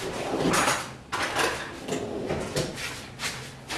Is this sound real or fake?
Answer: real